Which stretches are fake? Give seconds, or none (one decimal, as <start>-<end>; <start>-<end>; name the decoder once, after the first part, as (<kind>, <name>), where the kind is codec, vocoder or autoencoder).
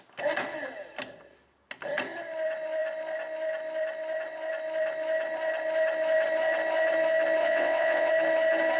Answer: 7.4-8.1 (vocoder, WaveNeXt)